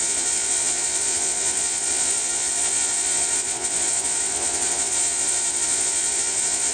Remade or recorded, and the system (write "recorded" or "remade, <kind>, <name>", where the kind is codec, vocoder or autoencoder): remade, vocoder, Vocos